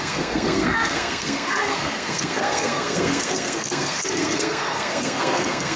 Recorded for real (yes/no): no